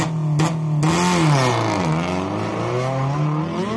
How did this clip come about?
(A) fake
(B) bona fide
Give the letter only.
B